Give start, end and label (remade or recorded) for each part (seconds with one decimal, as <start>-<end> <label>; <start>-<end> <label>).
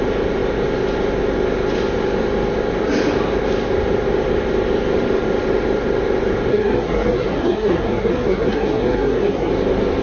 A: 0.0-6.5 recorded; 6.5-9.5 remade; 9.5-10.0 recorded